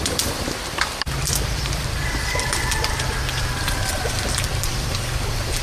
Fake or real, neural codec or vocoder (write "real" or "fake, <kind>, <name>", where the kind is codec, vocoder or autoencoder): fake, vocoder, BigVGAN v2